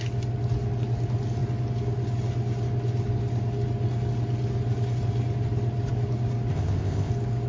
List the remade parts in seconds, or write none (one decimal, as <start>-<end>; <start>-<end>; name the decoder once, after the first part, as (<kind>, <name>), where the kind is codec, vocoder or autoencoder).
6.5-7.1 (codec, ZipCodec)